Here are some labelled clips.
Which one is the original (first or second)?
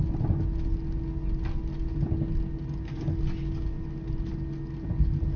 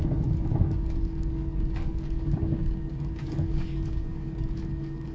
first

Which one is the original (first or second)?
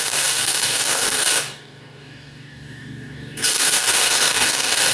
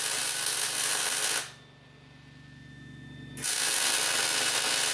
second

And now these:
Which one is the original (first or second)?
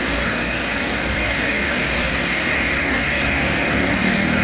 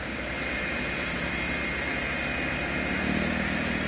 second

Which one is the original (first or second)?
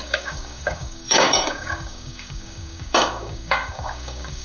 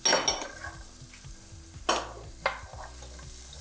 second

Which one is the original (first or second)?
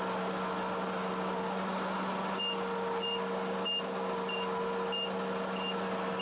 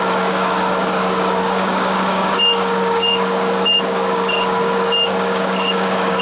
first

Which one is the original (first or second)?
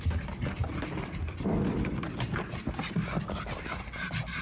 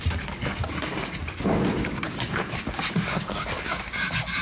first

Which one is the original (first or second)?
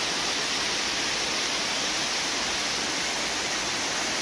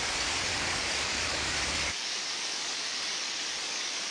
first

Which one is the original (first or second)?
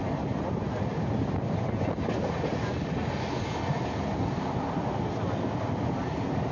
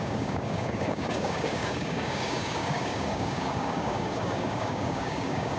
first